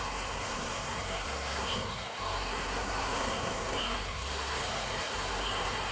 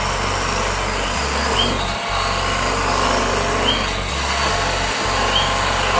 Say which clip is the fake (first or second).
first